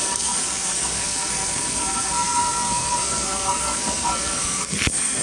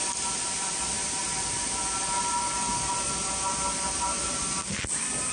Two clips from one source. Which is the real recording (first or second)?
second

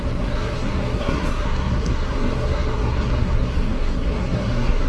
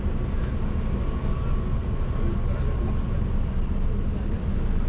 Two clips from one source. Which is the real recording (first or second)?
second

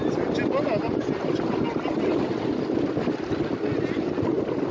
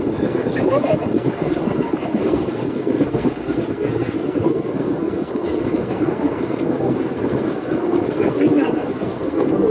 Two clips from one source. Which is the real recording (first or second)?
first